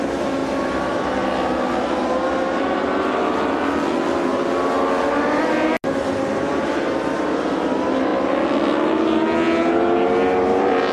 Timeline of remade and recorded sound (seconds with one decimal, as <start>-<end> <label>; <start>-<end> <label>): 0.0-10.9 recorded